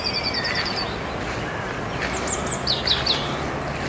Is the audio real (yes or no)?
yes